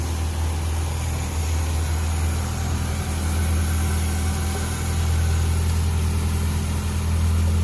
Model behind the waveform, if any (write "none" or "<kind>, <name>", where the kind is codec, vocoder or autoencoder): none